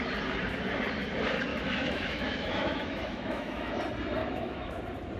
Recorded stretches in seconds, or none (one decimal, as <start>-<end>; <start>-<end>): 0.0-1.5; 3.8-4.2; 4.8-5.2